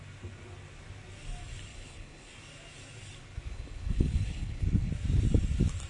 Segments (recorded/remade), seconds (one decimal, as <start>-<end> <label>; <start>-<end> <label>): 0.0-1.7 recorded; 1.7-2.3 remade; 2.3-3.5 recorded; 3.5-4.9 remade; 4.9-5.9 recorded